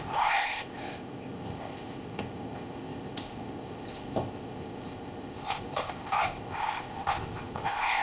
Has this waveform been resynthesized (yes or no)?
yes